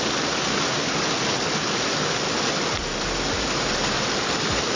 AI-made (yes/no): no